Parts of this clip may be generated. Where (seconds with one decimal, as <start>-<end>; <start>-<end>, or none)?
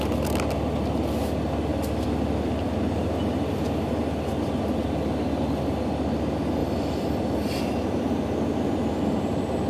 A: 6.6-7.6